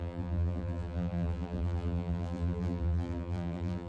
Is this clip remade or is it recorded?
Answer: remade